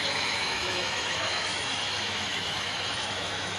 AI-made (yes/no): yes